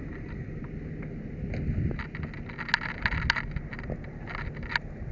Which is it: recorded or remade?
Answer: recorded